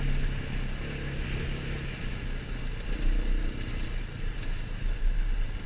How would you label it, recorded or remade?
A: recorded